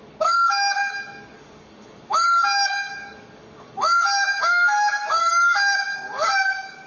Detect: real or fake fake